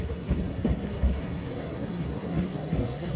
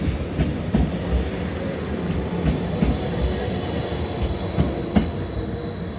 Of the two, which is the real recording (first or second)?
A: second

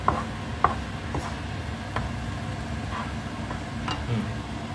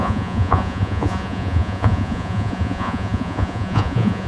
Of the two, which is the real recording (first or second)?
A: first